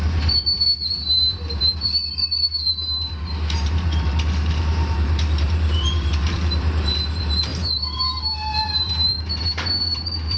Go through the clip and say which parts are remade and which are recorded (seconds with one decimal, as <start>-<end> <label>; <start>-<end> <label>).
0.0-10.4 remade